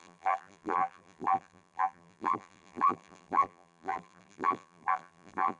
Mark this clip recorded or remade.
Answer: remade